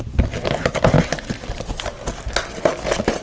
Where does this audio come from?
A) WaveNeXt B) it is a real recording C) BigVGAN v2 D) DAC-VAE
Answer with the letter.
B